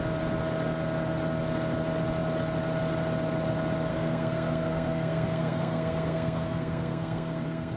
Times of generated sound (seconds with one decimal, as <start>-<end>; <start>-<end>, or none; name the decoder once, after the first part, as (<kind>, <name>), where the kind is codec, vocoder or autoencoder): 3.9-7.8 (codec, SNAC)

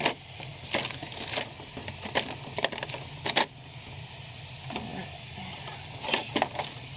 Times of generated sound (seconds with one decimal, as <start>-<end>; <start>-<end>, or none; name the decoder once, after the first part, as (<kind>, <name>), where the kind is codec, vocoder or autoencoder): none

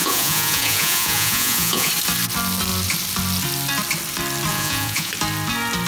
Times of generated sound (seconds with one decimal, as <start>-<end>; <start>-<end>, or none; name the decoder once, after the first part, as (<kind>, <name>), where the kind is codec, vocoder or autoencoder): 0.0-1.9 (vocoder, Vocos); 4.5-5.1